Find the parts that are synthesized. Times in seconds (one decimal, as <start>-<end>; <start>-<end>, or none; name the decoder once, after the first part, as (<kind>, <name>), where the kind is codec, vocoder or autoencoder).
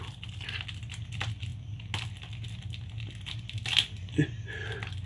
none